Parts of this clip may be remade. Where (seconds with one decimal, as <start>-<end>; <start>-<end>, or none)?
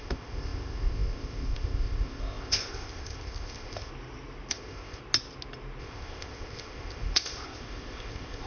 0.0-3.9; 4.5-5.0; 5.8-8.5